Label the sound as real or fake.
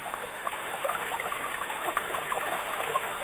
fake